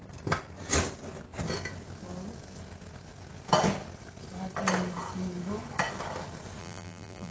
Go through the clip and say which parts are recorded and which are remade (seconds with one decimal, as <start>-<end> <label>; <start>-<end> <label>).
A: 0.0-6.6 recorded; 6.6-7.3 remade